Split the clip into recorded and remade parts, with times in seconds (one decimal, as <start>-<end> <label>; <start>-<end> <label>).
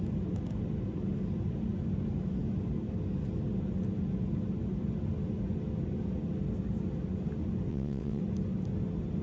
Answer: 0.0-7.7 recorded; 7.7-8.2 remade; 8.2-9.2 recorded